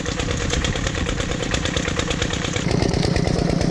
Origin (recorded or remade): remade